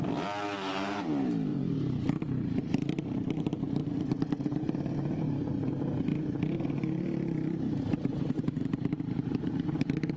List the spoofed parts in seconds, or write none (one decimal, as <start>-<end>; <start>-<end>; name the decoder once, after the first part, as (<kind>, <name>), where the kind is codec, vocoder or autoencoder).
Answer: 1.5-4.7 (vocoder, BigVGAN v2); 6.1-10.2